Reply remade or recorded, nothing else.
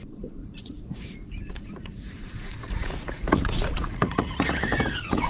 remade